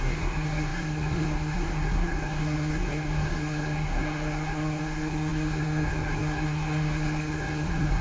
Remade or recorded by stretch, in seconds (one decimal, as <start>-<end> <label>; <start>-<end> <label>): 0.0-8.0 remade